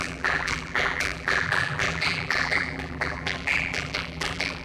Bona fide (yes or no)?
no